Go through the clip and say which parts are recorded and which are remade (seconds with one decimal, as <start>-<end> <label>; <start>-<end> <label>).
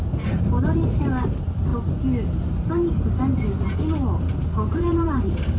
0.0-1.7 remade; 1.7-4.4 recorded; 4.4-5.6 remade